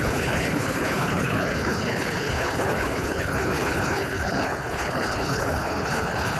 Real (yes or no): no